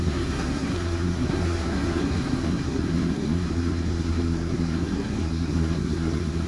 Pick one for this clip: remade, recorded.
remade